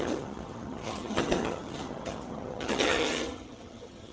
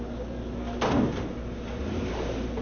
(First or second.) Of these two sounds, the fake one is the first